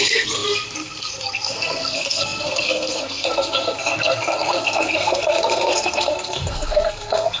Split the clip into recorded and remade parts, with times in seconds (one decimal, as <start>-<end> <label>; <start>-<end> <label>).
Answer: 0.0-7.4 remade